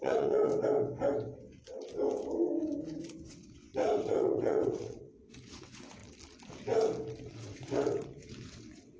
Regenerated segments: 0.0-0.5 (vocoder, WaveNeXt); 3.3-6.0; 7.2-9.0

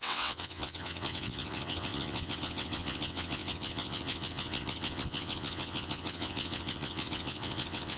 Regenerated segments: 0.0-8.0 (vocoder, WaveNeXt)

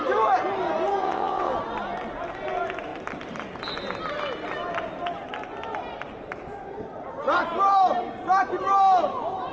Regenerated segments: 1.0-1.5 (vocoder, WaveNeXt)

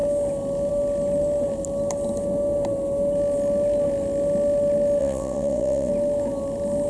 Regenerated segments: 5.0-5.9 (vocoder, WaveNeXt)

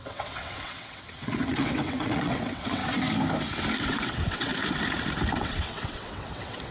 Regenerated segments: 0.0-2.8 (vocoder, WaveNeXt); 3.8-4.5; 5.3-6.7

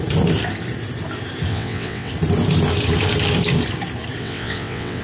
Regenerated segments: 1.5-2.1 (vocoder, WaveNeXt); 4.2-5.0